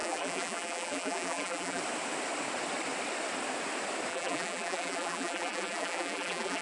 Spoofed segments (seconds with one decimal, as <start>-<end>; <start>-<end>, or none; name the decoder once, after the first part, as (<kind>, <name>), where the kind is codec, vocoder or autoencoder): 0.0-1.8 (vocoder, BigVGAN v2); 4.1-6.6